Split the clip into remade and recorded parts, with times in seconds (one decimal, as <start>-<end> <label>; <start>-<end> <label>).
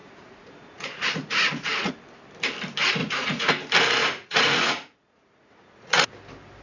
0.0-1.9 remade; 1.9-3.0 recorded; 3.0-3.5 remade; 3.5-4.0 recorded; 4.0-6.1 remade; 6.1-6.6 recorded